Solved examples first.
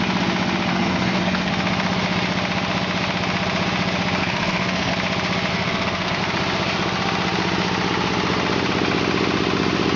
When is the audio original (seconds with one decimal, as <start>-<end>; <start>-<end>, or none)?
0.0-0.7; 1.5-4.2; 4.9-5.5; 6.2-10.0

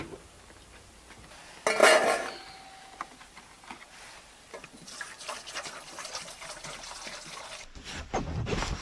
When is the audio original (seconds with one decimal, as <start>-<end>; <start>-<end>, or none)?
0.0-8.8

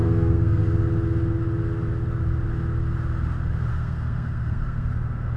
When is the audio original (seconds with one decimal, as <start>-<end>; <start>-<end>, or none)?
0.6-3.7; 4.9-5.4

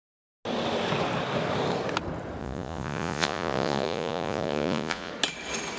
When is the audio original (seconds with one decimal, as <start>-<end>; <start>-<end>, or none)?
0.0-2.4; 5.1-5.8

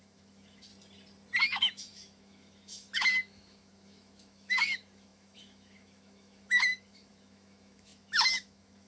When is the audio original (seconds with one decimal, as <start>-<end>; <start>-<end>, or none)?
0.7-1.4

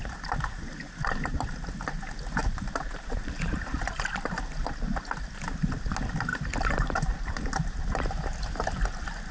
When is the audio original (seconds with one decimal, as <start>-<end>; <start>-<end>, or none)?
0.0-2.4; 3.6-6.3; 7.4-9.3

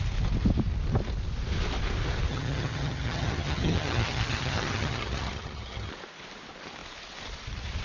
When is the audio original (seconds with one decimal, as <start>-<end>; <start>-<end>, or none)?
0.0-2.3; 5.9-7.8